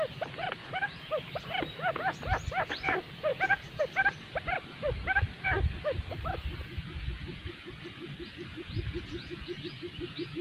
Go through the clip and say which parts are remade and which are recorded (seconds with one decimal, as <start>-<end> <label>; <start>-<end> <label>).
0.0-0.6 recorded; 0.6-1.1 remade; 1.1-3.3 recorded; 3.3-3.8 remade; 3.8-6.6 recorded; 6.6-7.9 remade; 7.9-8.5 recorded; 8.5-9.6 remade; 9.6-10.4 recorded